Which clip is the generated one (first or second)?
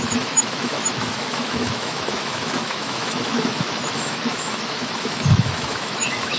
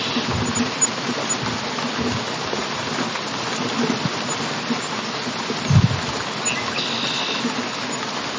first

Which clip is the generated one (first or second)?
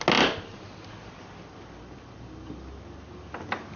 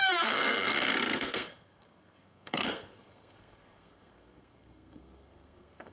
second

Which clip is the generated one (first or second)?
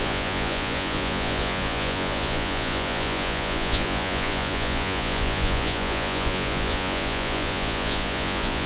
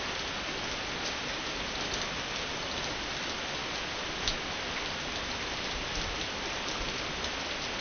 first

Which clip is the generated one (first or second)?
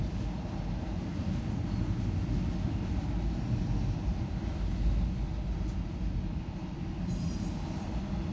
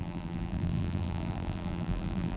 second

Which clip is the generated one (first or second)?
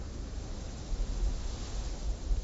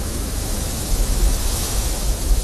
second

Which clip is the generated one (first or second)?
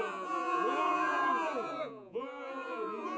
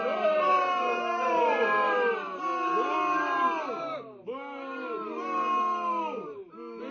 first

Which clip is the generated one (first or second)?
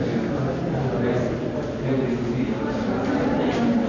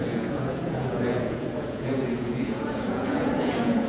second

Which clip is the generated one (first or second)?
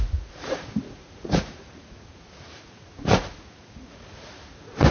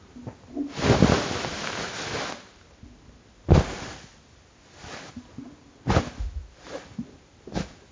first